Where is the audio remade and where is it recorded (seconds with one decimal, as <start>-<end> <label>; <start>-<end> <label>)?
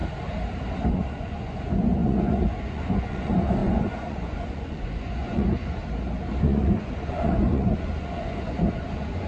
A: 0.0-0.9 recorded; 0.9-5.8 remade; 5.8-6.4 recorded; 6.4-9.3 remade